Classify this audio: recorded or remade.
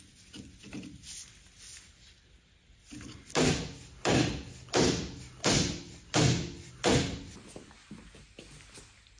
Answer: recorded